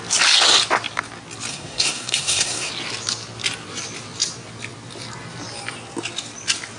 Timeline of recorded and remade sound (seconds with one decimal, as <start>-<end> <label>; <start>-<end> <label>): 0.0-1.5 recorded; 1.5-2.7 remade; 2.7-6.8 recorded